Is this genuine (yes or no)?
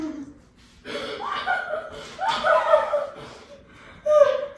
yes